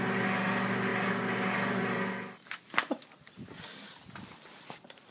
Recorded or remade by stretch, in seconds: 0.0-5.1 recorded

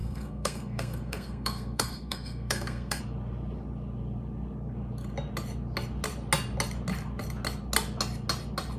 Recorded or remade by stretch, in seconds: 0.0-3.0 remade; 3.0-8.8 recorded

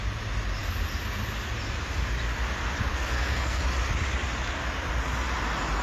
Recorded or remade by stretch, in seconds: 0.0-2.9 recorded; 2.9-3.6 remade; 3.6-5.8 recorded

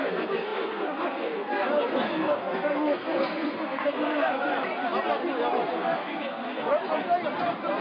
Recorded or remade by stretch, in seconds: 0.0-4.5 remade; 4.5-5.7 recorded; 5.7-6.7 remade; 6.7-7.8 recorded

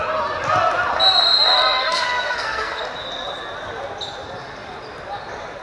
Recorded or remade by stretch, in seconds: 0.0-1.8 recorded; 1.8-2.8 remade; 2.8-5.6 recorded

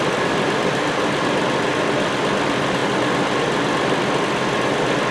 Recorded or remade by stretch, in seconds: 0.0-5.1 recorded

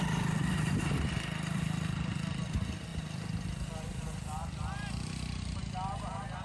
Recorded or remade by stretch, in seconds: 0.0-6.4 recorded

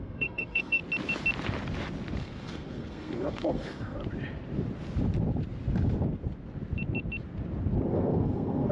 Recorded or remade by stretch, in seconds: 0.0-0.8 remade; 0.8-2.2 recorded; 2.2-4.0 remade; 4.0-7.9 recorded; 7.9-8.7 remade